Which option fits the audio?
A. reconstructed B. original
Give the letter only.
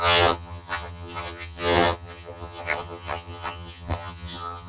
A